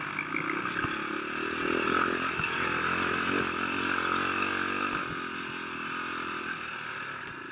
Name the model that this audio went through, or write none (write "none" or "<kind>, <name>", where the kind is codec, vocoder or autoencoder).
none